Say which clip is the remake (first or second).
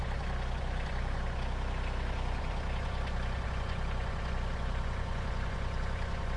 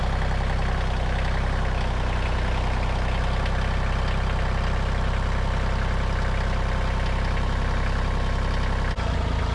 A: first